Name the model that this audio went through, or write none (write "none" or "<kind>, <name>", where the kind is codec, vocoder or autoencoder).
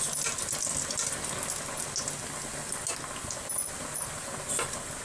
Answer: none